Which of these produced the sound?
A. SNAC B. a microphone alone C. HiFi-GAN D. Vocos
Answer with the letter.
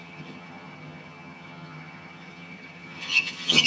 C